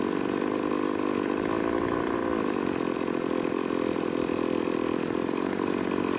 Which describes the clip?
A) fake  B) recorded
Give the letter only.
B